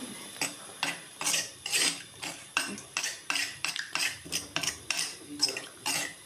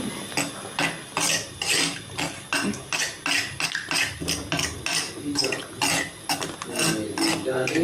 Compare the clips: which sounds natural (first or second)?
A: second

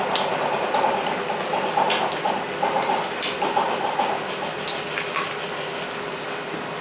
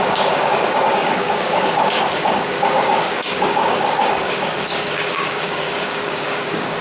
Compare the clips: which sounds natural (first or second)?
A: first